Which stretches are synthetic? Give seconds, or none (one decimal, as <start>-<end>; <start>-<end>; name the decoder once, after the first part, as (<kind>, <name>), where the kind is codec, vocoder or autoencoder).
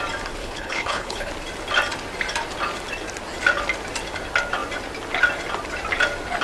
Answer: 0.4-1.3 (codec, HILCodec)